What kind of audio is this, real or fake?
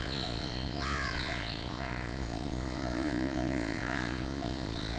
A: fake